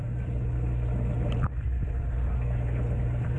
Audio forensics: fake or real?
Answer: fake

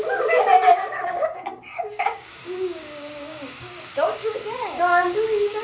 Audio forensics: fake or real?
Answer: fake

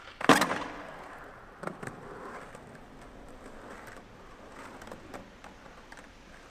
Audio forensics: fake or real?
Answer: real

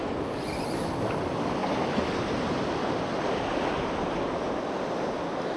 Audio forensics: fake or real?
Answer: real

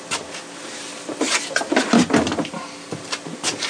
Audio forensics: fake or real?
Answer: fake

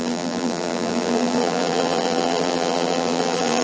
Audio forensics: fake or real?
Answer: fake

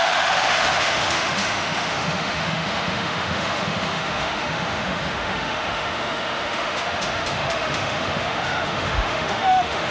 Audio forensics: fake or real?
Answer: fake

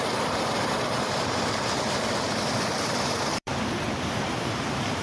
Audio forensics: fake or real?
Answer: fake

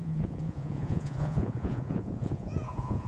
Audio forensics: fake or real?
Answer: fake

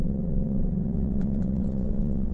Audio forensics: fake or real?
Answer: fake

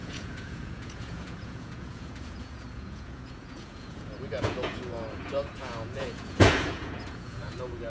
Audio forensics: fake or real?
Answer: fake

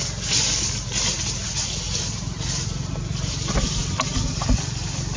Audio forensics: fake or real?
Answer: real